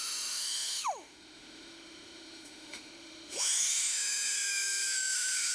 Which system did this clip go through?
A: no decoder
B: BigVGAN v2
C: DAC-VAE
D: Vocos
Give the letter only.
C